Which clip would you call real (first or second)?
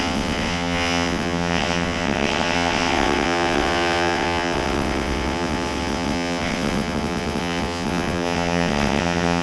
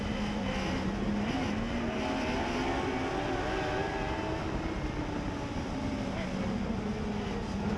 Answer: second